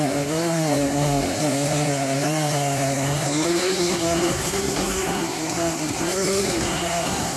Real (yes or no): no